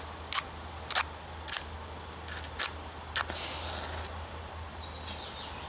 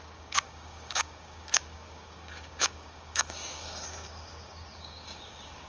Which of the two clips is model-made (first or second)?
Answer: second